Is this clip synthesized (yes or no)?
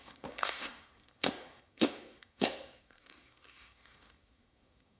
yes